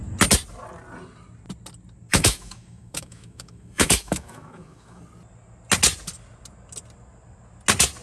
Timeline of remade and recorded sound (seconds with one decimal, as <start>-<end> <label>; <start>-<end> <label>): 0.0-2.1 recorded; 2.1-5.0 remade; 5.0-8.0 recorded